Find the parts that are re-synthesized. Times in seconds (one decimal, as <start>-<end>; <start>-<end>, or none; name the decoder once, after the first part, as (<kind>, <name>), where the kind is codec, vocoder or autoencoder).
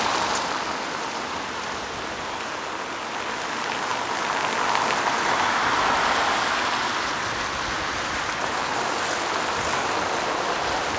none